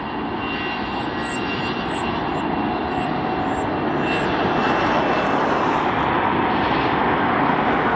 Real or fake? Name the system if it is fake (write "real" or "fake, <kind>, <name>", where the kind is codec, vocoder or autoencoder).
real